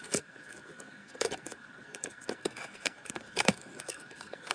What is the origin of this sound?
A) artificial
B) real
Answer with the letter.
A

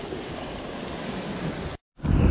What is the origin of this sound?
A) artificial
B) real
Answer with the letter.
B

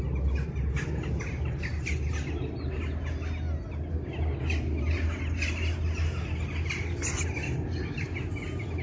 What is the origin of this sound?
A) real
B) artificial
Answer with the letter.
A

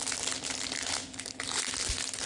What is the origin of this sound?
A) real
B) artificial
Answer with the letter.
A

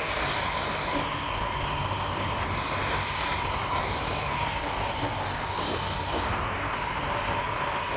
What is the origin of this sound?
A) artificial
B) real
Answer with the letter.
B